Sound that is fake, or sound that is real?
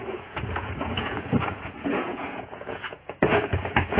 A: fake